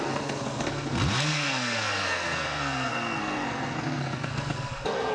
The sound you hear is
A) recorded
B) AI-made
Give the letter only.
B